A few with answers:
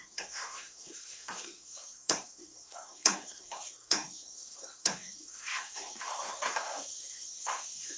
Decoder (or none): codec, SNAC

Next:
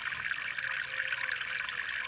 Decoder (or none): none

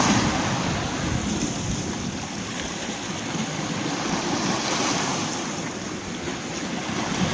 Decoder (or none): none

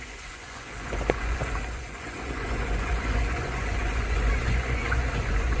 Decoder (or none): vocoder, Vocos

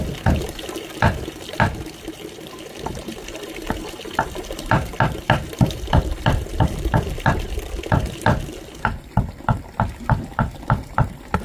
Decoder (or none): vocoder, BigVGAN v2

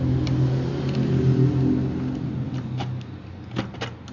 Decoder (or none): none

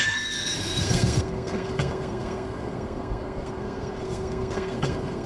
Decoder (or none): codec, SNAC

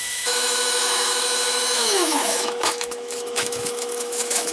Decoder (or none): autoencoder, DAC-VAE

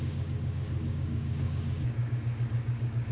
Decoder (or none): codec, DAC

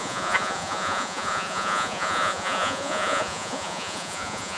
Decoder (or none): vocoder, Vocos